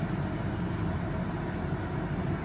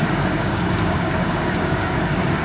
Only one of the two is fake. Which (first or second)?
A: second